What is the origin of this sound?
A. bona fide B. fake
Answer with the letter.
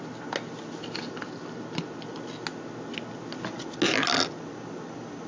A